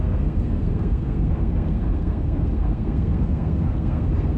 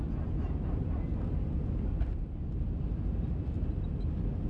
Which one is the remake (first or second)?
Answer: first